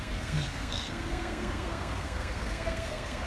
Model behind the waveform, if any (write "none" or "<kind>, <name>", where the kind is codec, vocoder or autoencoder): codec, SNAC